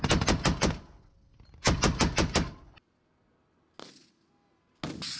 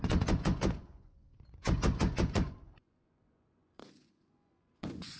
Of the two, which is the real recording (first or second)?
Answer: first